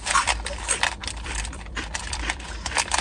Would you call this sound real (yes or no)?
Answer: no